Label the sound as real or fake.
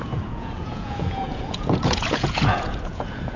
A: fake